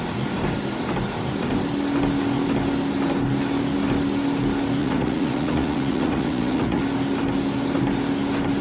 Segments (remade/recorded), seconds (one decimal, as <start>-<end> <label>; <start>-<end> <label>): 0.0-4.8 recorded; 4.8-6.8 remade; 6.8-8.6 recorded